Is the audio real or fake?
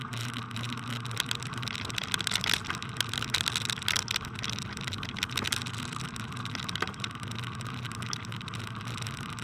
real